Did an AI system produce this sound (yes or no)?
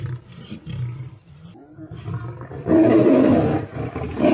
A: no